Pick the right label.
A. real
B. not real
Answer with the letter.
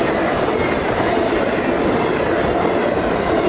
B